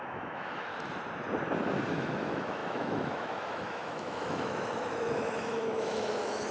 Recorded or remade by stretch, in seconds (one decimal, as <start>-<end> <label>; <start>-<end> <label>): 0.0-0.7 remade; 0.7-1.9 recorded; 1.9-6.5 remade